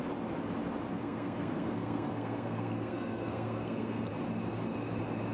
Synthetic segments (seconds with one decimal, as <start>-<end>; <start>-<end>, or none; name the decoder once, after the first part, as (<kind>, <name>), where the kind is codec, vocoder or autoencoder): 0.9-4.1 (codec, SNAC)